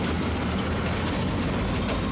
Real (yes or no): yes